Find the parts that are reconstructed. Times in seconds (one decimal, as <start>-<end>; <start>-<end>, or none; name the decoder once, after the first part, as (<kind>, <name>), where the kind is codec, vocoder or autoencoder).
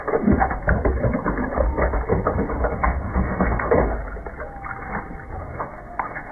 0.0-0.6 (autoencoder, DAC-VAE); 2.7-4.0; 5.4-6.3